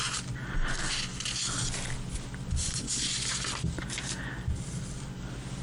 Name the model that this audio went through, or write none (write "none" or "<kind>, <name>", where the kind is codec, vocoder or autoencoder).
none